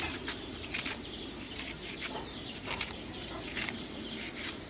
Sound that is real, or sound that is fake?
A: fake